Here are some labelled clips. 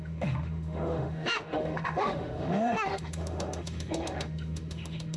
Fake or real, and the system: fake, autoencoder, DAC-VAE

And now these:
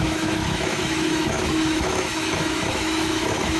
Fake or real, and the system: fake, autoencoder, DAC-VAE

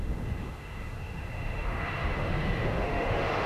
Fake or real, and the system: fake, autoencoder, DAC-VAE